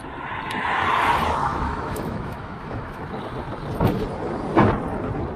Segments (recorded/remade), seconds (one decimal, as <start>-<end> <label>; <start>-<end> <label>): 0.0-1.4 recorded; 1.4-3.0 remade; 3.0-5.4 recorded